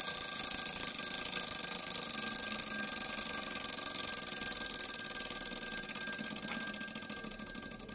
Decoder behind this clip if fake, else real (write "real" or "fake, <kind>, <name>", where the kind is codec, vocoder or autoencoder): real